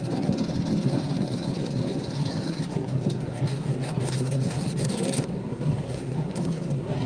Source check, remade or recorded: remade